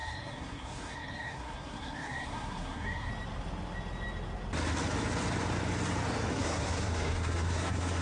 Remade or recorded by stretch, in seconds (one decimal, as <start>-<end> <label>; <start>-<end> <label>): 0.0-3.1 remade; 3.1-6.3 recorded; 6.3-8.0 remade